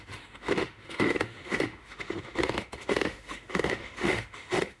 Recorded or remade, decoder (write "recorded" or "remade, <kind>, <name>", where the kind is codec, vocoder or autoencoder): remade, autoencoder, DAC-VAE